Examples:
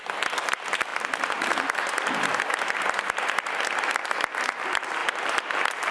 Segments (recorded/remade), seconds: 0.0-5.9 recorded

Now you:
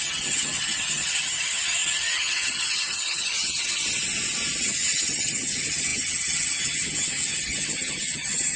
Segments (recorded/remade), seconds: 0.0-3.8 remade; 3.8-4.6 recorded; 4.6-8.6 remade

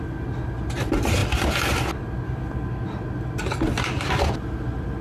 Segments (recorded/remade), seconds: 0.0-5.0 recorded